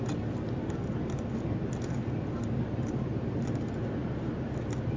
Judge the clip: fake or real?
real